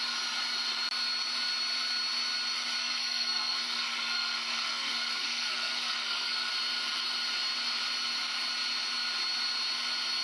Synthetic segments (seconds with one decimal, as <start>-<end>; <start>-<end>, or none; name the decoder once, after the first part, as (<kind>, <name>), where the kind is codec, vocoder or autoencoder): 2.8-6.5 (codec, SNAC)